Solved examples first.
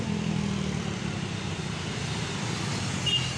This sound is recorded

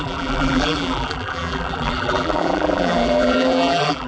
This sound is remade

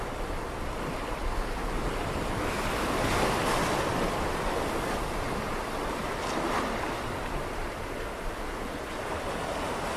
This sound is recorded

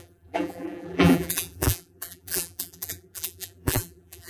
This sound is remade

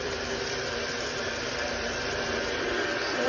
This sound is remade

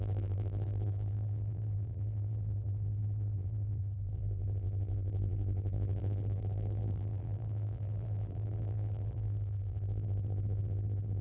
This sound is remade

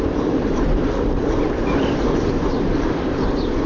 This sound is remade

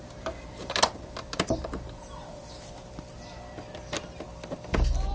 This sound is recorded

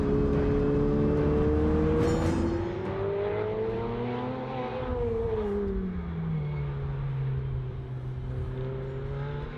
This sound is recorded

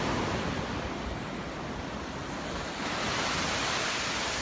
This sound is recorded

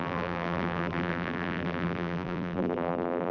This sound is remade